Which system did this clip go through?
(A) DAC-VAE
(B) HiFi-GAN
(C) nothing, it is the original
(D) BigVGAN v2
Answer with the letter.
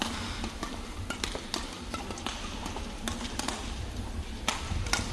C